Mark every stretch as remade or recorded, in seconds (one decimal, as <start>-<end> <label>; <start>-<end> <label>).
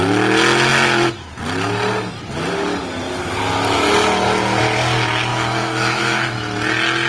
0.0-5.3 recorded; 5.3-6.3 remade; 6.3-7.1 recorded